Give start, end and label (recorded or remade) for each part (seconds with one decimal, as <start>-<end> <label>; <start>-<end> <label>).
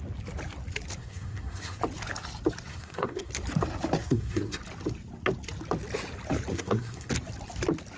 0.0-1.0 recorded; 1.0-1.8 remade; 1.8-2.7 recorded; 2.7-3.3 remade; 3.3-4.0 recorded; 4.0-4.6 remade; 4.6-6.5 recorded; 6.5-7.1 remade; 7.1-8.0 recorded